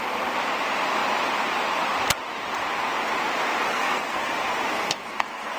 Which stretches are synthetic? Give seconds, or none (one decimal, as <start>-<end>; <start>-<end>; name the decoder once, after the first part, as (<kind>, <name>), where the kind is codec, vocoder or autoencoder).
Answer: 3.7-4.3 (codec, SNAC); 4.7-5.6